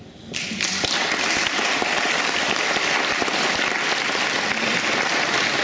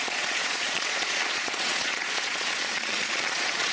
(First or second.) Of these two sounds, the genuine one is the first